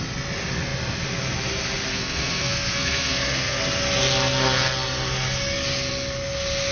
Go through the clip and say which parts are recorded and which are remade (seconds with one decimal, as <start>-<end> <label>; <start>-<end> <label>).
0.0-1.9 recorded; 1.9-3.6 remade; 3.6-6.7 recorded